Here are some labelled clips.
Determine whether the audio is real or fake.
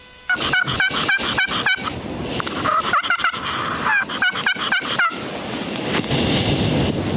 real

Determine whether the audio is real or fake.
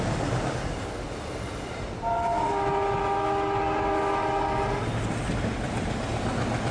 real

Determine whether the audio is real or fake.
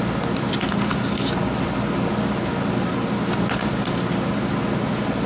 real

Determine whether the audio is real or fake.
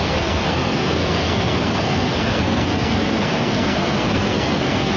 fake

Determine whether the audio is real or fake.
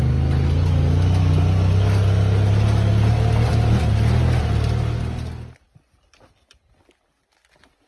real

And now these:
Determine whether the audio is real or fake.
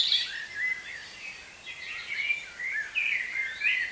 real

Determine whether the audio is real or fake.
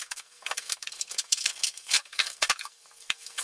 fake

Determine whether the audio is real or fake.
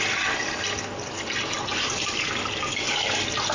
real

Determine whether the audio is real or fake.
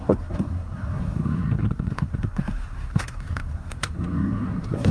fake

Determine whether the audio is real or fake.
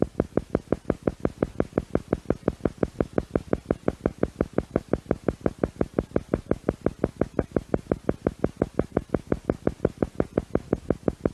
real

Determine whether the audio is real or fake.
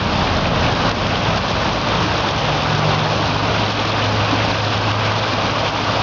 real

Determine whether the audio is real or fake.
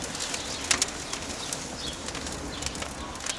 real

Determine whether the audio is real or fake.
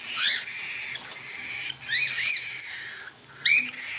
real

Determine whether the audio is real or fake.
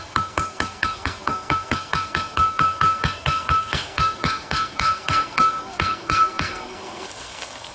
fake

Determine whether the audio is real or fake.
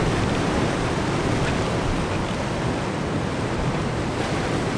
real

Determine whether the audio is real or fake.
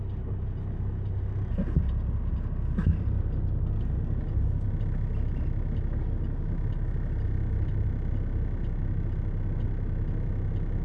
real